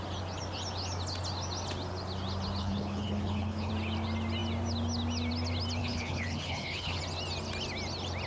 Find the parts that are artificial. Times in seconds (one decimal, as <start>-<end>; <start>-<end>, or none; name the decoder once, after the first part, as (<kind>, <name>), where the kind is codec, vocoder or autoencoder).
2.6-3.7 (codec, HILCodec); 5.8-7.0